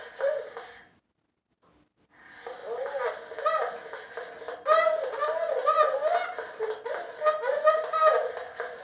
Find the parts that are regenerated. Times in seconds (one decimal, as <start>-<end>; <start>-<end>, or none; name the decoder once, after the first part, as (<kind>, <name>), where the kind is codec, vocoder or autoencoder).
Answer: none